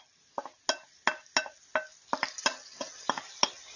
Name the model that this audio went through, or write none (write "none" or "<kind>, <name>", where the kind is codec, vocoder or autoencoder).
none